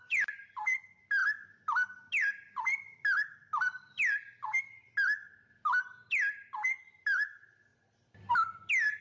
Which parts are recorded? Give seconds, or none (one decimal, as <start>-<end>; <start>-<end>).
0.0-9.0